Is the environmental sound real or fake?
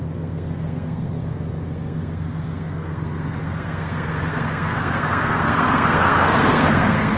fake